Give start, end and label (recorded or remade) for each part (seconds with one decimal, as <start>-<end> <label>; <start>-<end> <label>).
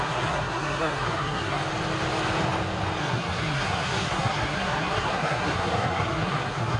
0.0-1.6 remade; 1.6-3.0 recorded; 3.0-6.8 remade